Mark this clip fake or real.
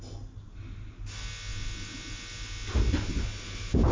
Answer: real